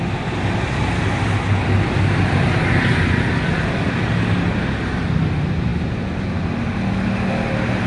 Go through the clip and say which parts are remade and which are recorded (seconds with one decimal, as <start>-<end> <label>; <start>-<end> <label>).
0.0-7.9 recorded